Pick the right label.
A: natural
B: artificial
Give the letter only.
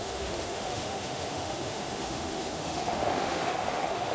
B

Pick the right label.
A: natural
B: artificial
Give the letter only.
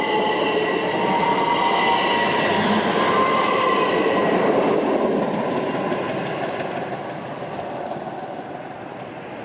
A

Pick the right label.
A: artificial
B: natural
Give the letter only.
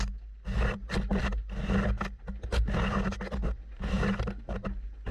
B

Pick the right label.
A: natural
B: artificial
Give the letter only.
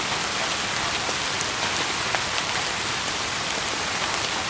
A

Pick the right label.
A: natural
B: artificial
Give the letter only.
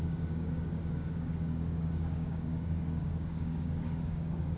B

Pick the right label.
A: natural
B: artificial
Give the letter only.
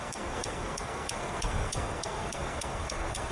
B